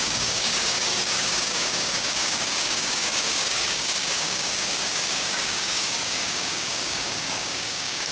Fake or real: fake